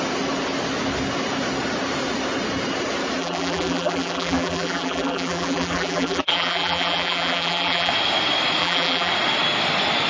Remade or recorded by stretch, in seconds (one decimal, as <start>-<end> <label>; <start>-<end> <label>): 0.0-3.2 recorded; 3.2-7.9 remade; 7.9-8.6 recorded; 8.6-9.1 remade; 9.1-10.1 recorded